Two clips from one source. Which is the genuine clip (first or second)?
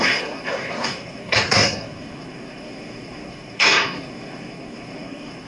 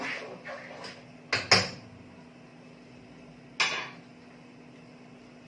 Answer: second